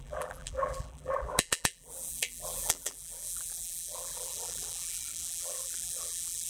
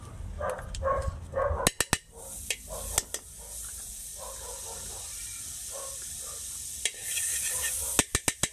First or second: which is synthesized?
first